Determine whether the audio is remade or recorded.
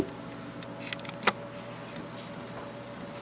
recorded